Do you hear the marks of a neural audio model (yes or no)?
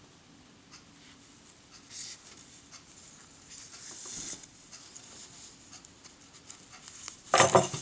no